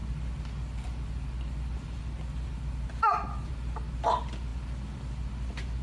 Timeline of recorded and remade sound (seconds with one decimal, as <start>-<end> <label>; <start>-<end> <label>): 0.0-5.8 recorded